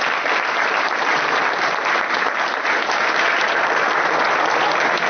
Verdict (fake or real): real